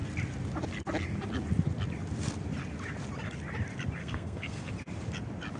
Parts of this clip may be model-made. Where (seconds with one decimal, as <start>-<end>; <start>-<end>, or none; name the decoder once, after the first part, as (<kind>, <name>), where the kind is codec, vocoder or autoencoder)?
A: 4.0-4.7 (codec, SNAC)